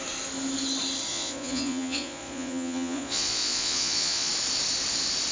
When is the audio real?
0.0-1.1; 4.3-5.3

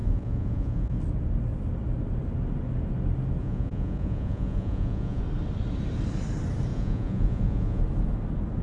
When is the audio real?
1.0-3.4; 5.2-6.7; 7.8-8.6

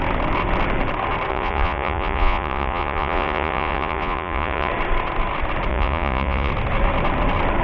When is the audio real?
0.0-1.3; 4.7-5.7; 6.5-7.6

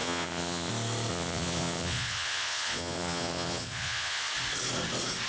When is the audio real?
0.7-1.1; 4.3-5.3

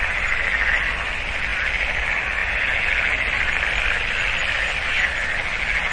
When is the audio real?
0.0-5.9

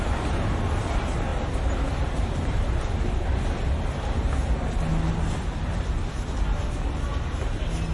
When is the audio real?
0.0-7.9